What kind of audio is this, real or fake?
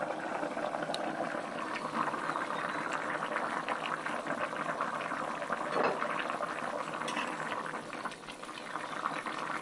real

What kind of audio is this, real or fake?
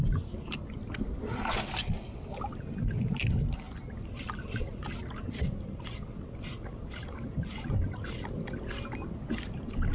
real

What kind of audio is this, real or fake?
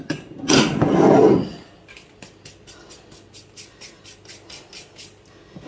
real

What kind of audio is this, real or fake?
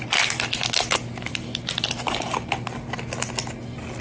real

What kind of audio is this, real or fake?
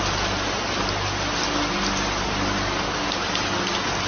real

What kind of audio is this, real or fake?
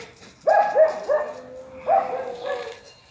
real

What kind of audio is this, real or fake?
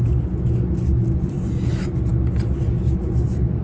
real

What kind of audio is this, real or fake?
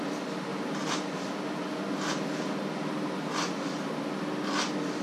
real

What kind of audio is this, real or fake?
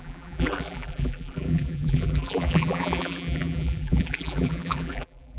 fake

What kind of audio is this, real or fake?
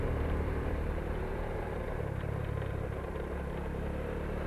fake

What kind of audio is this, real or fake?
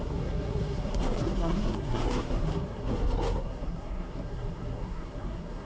fake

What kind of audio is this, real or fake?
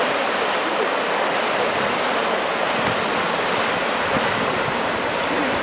fake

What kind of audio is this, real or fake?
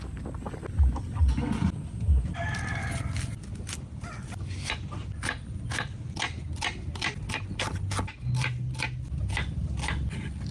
real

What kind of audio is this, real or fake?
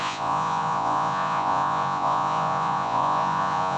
fake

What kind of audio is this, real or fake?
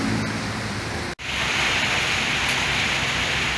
real